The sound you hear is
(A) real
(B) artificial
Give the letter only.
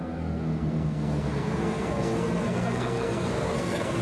B